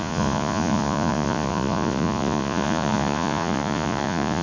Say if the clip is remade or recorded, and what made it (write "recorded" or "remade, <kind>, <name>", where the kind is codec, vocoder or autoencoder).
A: remade, vocoder, Vocos